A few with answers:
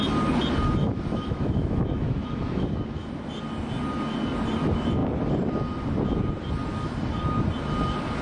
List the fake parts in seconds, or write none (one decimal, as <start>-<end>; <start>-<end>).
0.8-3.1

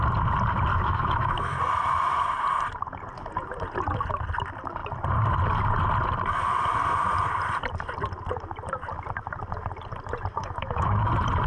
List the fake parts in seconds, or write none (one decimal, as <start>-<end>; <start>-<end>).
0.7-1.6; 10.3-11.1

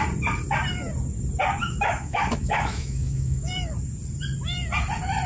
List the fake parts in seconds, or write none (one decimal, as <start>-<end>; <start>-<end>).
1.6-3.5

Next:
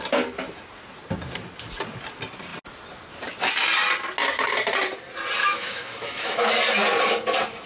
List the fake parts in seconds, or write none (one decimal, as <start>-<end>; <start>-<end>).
5.4-6.5

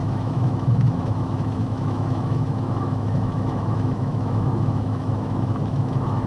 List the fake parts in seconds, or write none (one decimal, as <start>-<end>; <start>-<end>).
0.0-6.3

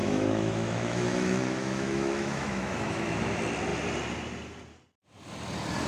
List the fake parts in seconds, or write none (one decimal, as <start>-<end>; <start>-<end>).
0.0-3.3

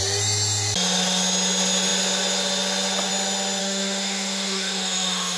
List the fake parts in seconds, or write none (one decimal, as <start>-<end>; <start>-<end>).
3.6-5.4